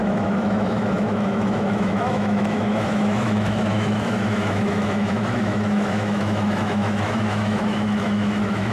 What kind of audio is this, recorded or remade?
remade